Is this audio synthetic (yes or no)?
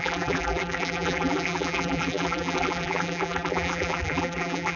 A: yes